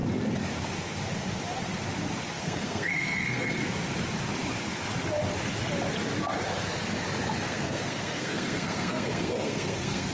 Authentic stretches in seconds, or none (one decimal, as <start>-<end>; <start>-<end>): 0.0-2.4; 3.6-7.4